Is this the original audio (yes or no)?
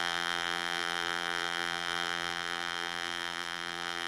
no